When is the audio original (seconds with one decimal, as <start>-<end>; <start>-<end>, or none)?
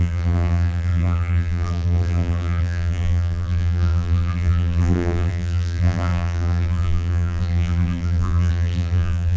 none